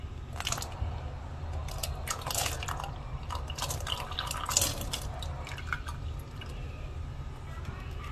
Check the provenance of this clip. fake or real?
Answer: real